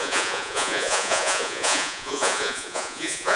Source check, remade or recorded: remade